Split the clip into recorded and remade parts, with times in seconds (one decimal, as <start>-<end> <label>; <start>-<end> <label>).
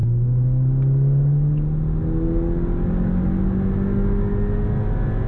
0.0-5.3 recorded